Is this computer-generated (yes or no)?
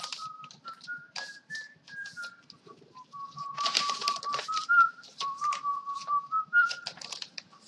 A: yes